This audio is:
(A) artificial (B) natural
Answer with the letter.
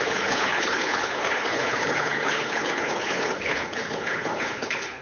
A